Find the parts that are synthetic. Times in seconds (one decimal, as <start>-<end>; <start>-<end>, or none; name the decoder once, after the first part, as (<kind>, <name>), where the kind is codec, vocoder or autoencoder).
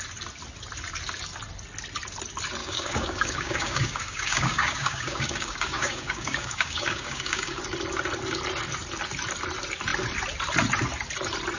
2.6-7.6 (codec, DAC)